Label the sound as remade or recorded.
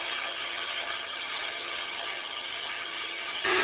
remade